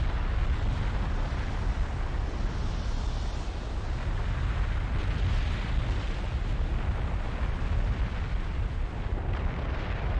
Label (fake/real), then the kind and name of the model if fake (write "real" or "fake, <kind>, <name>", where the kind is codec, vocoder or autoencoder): real